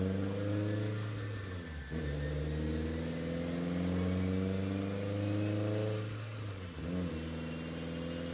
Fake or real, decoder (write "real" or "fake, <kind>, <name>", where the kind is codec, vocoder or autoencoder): real